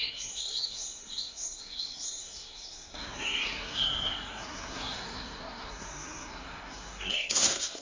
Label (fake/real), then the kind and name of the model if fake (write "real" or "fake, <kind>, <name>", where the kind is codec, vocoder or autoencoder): fake, codec, SNAC